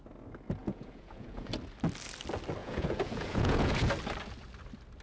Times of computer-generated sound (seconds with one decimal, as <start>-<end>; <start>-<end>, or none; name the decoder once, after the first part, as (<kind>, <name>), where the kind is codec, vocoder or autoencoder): 0.6-1.5 (vocoder, Vocos); 2.6-3.9